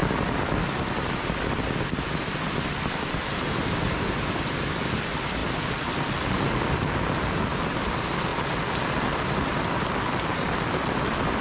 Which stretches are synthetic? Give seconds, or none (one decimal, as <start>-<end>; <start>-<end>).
none